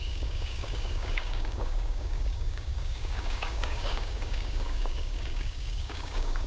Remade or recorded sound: remade